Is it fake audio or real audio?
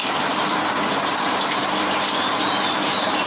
real